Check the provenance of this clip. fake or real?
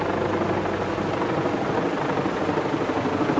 real